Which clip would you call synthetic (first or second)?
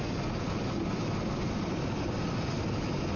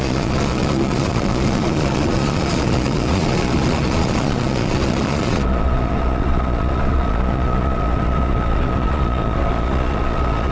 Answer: second